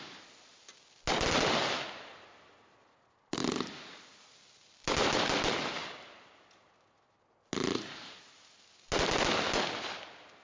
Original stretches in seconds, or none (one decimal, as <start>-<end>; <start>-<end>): 0.0-10.4